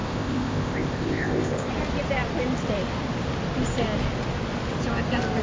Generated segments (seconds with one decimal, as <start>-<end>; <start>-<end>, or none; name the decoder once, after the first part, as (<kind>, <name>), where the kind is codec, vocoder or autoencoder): 0.0-1.7 (codec, ZipCodec)